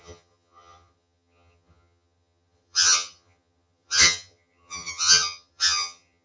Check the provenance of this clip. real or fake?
fake